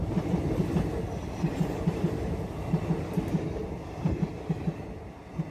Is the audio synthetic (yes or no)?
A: no